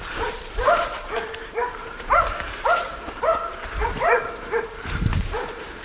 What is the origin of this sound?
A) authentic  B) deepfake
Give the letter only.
B